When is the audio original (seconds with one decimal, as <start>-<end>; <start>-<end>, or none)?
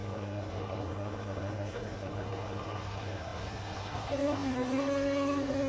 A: none